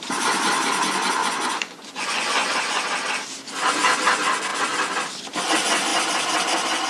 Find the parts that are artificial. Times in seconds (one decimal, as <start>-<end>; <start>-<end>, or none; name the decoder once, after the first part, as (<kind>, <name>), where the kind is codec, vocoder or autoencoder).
1.2-2.8 (vocoder, Vocos)

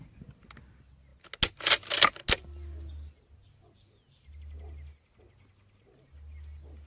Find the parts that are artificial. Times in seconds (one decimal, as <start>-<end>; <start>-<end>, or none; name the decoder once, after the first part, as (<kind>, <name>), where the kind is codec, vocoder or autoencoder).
none

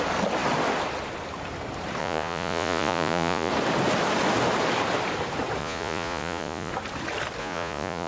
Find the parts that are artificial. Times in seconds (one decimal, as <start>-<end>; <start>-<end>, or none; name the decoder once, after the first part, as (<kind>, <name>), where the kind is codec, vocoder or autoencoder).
2.0-3.5 (vocoder, Vocos); 5.6-6.7; 7.4-8.1